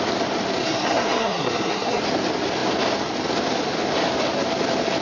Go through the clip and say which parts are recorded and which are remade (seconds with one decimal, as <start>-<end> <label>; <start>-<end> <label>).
0.0-0.6 recorded; 0.6-2.0 remade; 2.0-5.0 recorded